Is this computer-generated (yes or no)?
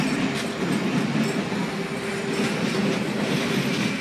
no